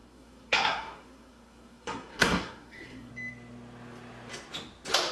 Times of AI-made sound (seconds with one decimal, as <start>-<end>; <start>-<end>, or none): 0.0-3.1